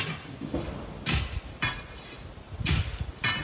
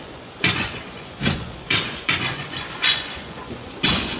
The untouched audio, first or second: first